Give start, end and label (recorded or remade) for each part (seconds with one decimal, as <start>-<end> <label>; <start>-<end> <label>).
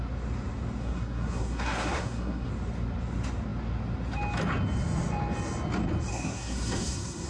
0.0-0.8 recorded; 0.8-2.5 remade; 2.5-6.1 recorded; 6.1-7.3 remade